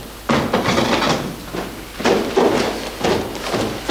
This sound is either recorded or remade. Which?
recorded